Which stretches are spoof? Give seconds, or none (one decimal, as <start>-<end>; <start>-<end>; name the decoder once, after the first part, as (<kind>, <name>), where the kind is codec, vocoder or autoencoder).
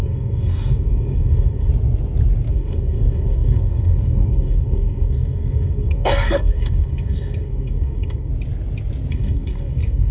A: 0.0-1.7 (codec, SNAC); 2.5-8.3; 9.1-10.1